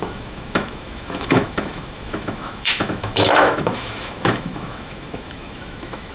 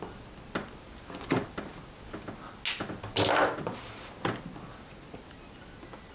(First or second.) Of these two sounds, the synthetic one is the first